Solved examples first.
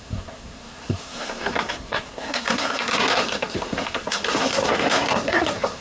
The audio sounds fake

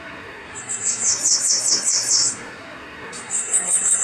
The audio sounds fake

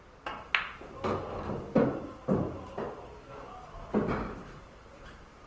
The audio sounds real